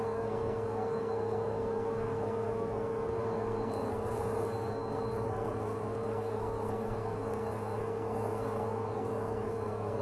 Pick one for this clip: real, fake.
fake